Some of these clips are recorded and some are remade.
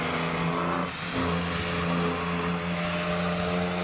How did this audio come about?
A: recorded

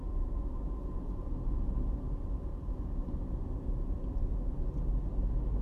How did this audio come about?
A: recorded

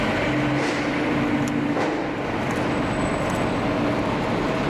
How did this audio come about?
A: recorded